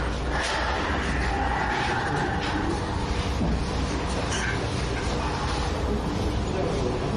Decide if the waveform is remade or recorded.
recorded